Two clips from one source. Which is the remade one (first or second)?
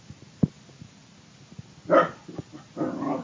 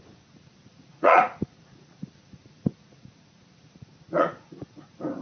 second